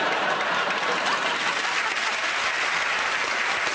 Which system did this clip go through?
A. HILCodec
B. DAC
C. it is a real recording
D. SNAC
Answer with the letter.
C